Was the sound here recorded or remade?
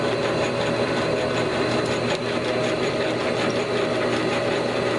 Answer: recorded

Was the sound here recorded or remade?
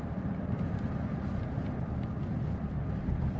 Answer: recorded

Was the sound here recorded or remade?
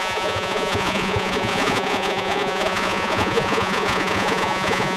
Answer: remade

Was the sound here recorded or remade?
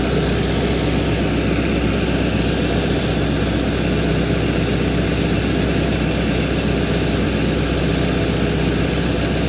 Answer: recorded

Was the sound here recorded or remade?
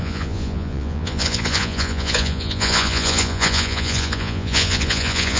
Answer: remade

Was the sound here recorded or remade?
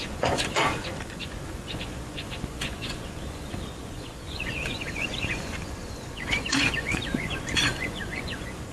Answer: remade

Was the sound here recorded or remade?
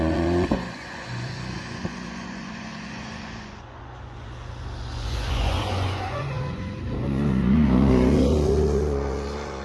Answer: remade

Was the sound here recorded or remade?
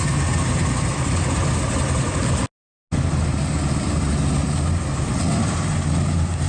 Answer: recorded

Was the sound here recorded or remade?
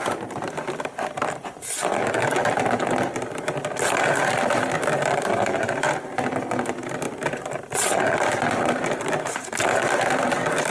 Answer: recorded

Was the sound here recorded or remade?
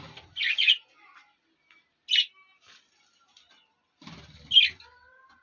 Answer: recorded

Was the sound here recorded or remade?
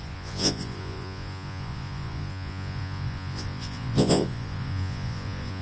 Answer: remade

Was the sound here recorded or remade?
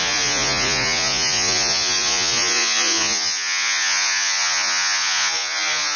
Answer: remade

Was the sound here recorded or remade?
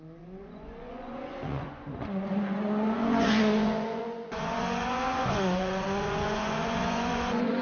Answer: remade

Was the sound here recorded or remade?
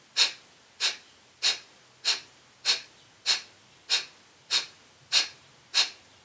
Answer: recorded